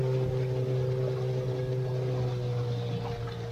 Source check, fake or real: real